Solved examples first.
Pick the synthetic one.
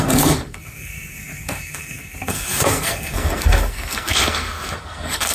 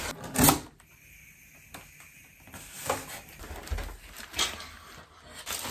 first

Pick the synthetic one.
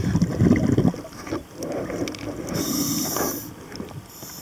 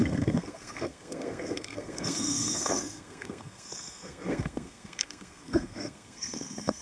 second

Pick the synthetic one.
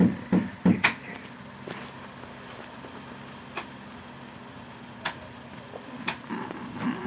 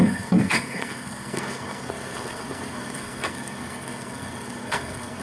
second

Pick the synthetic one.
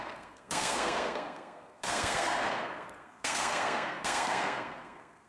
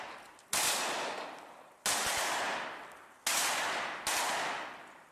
first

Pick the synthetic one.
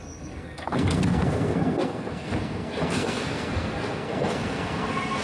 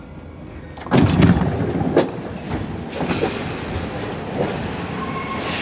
first